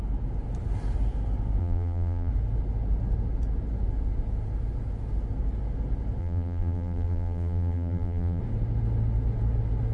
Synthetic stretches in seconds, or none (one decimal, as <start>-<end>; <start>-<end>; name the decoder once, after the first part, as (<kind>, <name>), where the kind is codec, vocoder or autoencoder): 1.6-2.3 (vocoder, BigVGAN v2); 6.2-8.4